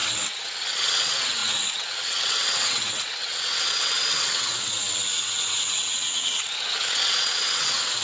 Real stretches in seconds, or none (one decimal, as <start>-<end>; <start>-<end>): none